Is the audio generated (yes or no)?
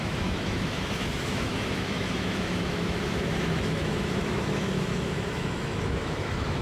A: yes